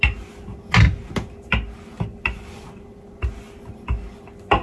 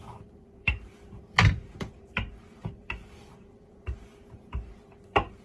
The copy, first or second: second